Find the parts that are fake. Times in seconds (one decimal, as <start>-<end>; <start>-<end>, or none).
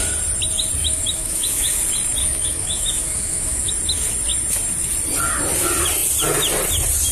0.8-1.8; 2.2-3.7